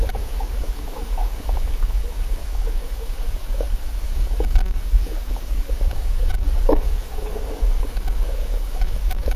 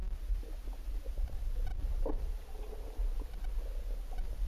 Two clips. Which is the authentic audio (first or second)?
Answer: second